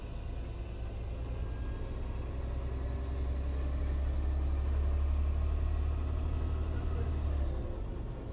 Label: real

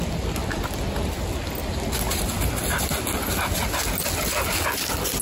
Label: real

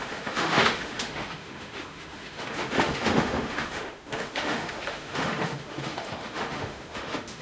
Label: fake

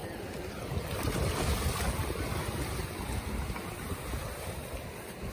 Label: real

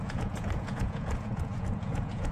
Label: fake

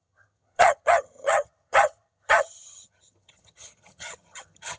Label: fake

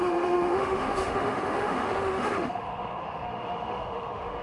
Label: fake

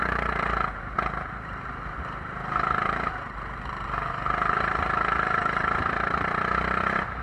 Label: fake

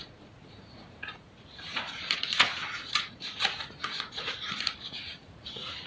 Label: fake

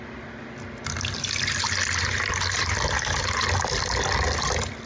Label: real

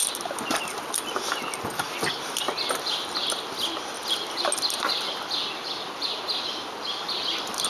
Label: real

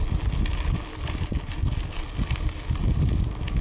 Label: real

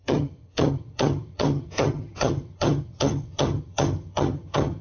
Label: fake